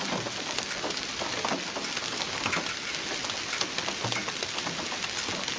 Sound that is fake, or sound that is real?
real